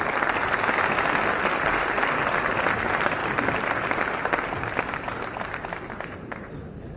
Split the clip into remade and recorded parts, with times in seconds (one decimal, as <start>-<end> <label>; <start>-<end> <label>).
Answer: 0.0-7.0 recorded